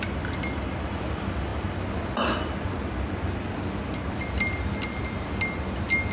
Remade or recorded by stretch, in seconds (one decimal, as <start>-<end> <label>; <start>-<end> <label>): 0.0-6.1 recorded